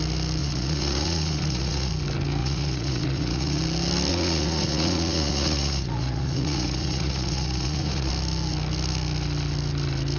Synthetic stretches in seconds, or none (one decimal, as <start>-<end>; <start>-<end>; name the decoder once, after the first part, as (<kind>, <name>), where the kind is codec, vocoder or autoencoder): 0.4-1.9 (vocoder, Vocos); 2.4-3.6; 4.1-8.1